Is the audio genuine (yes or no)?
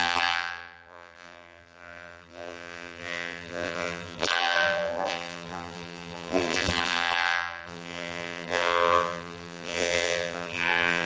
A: no